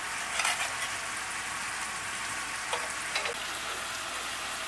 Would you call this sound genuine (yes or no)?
yes